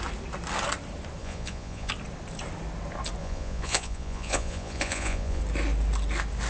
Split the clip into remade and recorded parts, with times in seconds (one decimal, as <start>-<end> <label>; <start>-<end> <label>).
0.0-1.2 recorded; 1.2-1.9 remade; 1.9-3.2 recorded; 3.2-5.4 remade; 5.4-6.5 recorded